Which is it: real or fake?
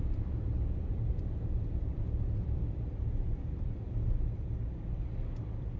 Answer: fake